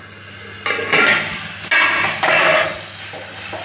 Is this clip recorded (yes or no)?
yes